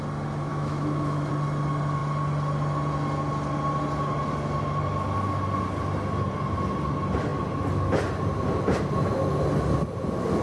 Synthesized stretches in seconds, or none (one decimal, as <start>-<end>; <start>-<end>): 0.5-1.3